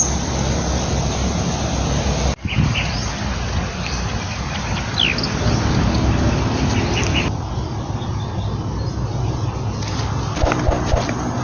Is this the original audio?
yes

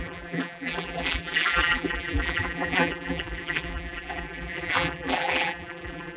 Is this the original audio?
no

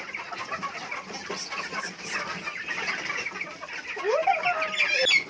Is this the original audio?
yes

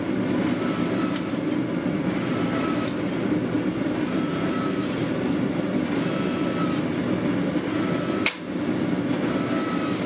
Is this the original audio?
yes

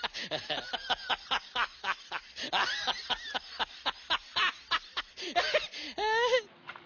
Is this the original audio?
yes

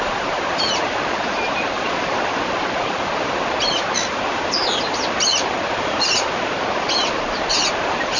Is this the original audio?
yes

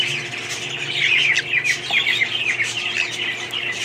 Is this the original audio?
yes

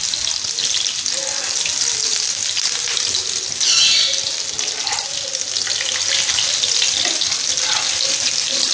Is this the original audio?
yes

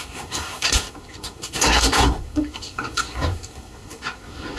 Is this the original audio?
no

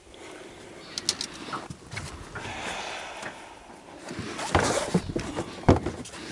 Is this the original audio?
yes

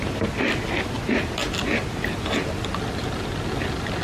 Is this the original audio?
yes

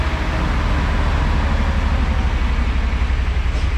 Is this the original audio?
yes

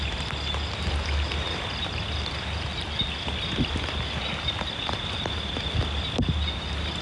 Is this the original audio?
yes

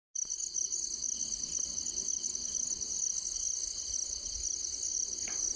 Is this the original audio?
yes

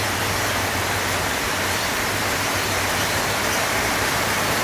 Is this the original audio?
no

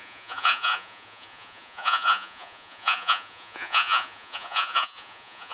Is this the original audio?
no